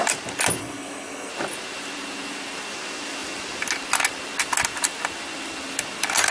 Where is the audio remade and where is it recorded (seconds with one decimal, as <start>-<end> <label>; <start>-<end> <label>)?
0.0-0.6 recorded; 0.6-1.3 remade; 1.3-6.3 recorded